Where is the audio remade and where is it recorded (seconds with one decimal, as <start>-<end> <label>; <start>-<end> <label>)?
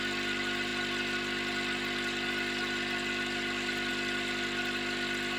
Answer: 0.0-5.4 recorded